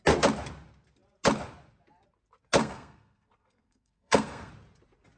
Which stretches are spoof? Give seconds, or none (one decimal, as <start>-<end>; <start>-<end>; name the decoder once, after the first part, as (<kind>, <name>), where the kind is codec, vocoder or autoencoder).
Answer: 2.6-4.5 (codec, SNAC)